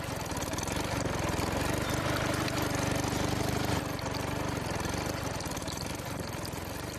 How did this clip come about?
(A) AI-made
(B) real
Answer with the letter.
B